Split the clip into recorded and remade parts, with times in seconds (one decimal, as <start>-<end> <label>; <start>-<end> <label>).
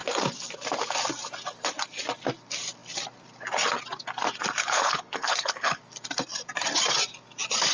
0.0-4.6 recorded; 4.6-5.8 remade; 5.8-7.7 recorded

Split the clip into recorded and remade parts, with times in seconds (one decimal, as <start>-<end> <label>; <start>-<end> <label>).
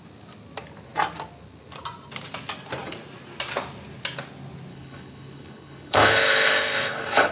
0.0-4.7 recorded; 4.7-7.3 remade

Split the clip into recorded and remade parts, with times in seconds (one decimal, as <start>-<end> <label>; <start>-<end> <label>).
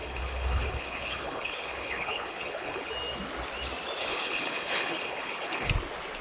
0.0-2.9 remade; 2.9-4.0 recorded; 4.0-5.7 remade; 5.7-6.2 recorded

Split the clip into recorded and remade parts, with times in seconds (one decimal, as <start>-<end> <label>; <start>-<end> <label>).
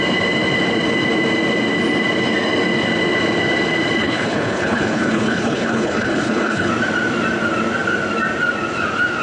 0.0-4.0 recorded; 4.0-6.7 remade; 6.7-9.2 recorded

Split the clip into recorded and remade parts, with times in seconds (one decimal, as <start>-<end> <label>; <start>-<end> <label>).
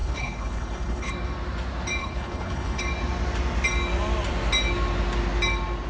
0.0-1.1 remade; 1.1-2.0 recorded; 2.0-2.8 remade; 2.8-5.9 recorded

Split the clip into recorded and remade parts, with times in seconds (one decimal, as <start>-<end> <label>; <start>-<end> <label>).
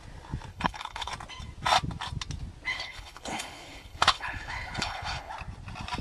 0.0-0.5 recorded; 0.5-1.1 remade; 1.1-2.7 recorded; 2.7-5.3 remade; 5.3-6.0 recorded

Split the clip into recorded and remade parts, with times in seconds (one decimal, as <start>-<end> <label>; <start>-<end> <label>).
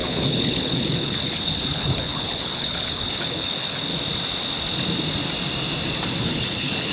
0.0-3.9 remade; 3.9-6.2 recorded; 6.2-6.9 remade